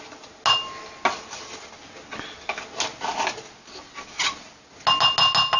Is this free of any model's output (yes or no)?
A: yes